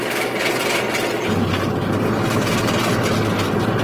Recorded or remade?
recorded